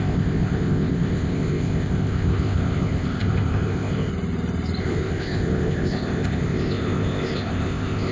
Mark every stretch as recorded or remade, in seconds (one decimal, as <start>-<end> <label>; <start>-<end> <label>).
0.0-4.1 remade; 4.1-4.8 recorded; 4.8-8.1 remade